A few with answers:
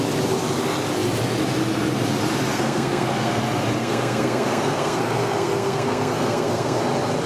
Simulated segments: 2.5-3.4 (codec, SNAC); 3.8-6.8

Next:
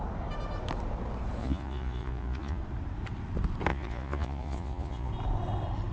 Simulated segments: 1.4-2.6 (vocoder, Vocos); 3.7-5.1